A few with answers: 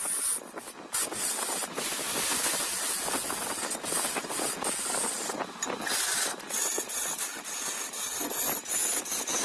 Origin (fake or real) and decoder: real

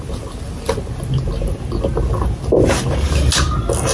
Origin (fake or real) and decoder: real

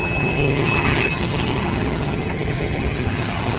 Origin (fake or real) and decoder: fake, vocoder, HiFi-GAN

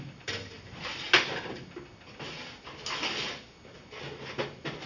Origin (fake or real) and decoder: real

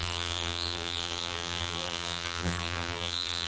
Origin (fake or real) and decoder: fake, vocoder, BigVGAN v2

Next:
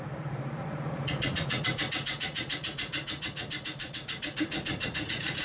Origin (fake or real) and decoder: fake, vocoder, Vocos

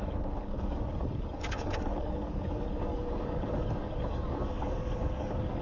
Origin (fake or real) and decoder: fake, codec, DAC